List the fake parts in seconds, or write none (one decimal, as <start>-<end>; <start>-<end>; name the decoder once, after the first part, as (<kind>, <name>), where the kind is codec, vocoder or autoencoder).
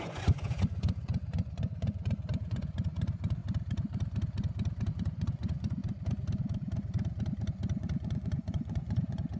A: 0.0-3.4 (vocoder, Vocos); 4.9-5.8; 7.8-9.4